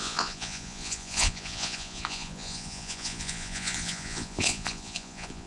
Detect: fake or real fake